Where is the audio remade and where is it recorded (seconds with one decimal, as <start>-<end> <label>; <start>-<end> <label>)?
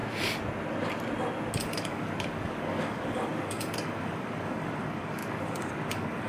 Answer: 0.0-1.6 recorded; 1.6-6.3 remade